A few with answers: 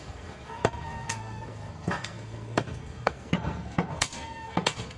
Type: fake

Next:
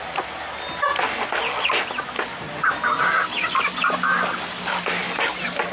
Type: real